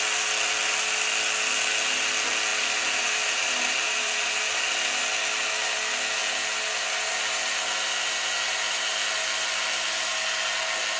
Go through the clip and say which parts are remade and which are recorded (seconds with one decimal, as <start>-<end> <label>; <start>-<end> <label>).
0.0-2.5 recorded; 2.5-5.0 remade; 5.0-11.0 recorded